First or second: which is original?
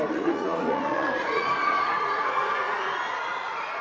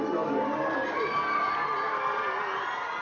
second